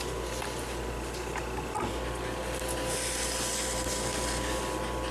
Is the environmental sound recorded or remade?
recorded